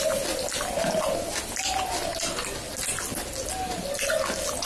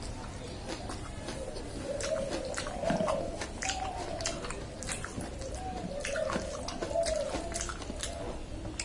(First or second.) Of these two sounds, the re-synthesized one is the second